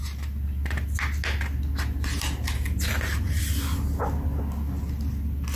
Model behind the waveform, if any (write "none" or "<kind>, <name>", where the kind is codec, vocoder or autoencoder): none